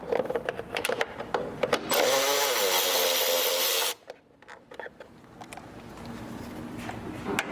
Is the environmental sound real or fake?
real